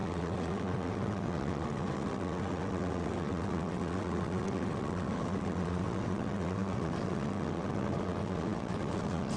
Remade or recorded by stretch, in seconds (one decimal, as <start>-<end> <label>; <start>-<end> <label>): 0.0-9.4 remade